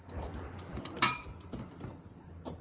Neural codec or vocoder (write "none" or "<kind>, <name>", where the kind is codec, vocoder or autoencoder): none